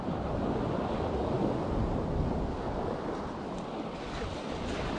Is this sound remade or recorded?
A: recorded